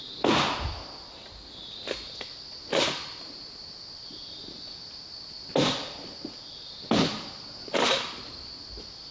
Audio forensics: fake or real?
real